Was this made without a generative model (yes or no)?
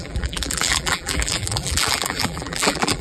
no